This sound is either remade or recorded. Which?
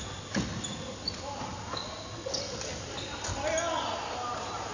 recorded